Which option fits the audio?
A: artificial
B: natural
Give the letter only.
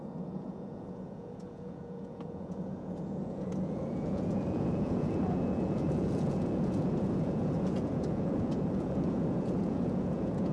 A